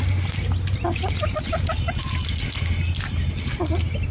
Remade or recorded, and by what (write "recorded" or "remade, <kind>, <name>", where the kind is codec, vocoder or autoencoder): recorded